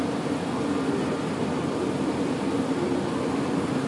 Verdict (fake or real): real